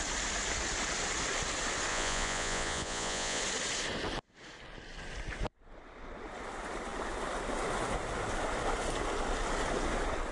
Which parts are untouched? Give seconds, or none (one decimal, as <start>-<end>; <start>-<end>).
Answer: 0.0-1.9; 3.4-10.3